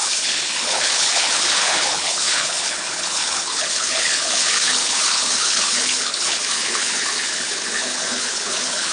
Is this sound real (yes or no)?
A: no